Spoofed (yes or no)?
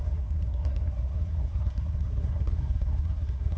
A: yes